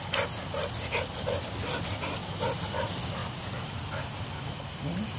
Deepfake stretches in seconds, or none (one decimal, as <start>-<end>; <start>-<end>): 2.2-2.7